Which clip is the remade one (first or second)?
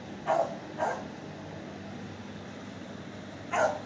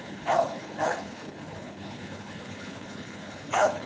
second